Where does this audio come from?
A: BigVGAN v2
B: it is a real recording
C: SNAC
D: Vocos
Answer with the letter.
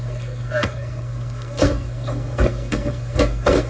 C